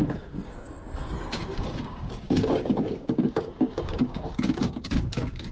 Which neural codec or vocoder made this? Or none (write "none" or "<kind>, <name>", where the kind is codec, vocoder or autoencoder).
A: codec, DAC